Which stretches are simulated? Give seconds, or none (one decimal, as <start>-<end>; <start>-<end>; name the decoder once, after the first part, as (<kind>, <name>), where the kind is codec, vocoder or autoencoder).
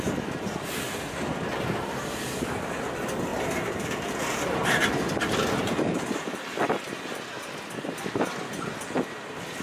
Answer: 3.3-6.6 (vocoder, BigVGAN v2)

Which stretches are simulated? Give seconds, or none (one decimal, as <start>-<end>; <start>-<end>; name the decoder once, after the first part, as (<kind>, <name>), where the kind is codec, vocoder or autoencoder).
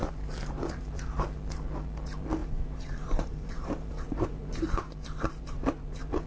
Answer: 0.0-1.0 (vocoder, BigVGAN v2); 2.4-6.3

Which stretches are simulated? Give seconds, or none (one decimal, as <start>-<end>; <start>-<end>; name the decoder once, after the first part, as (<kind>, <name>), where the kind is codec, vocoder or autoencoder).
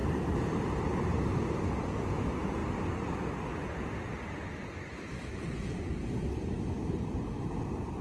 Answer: 0.0-1.7 (vocoder, BigVGAN v2)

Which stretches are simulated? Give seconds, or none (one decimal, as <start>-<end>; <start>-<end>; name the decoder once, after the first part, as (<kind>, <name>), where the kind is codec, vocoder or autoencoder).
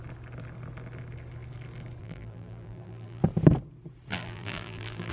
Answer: 2.0-3.2 (vocoder, BigVGAN v2); 4.1-5.1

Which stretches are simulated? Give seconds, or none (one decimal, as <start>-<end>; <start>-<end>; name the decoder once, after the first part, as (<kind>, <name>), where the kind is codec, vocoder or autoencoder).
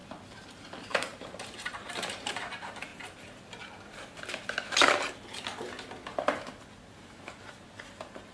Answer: 0.6-2.9 (vocoder, BigVGAN v2); 6.9-8.3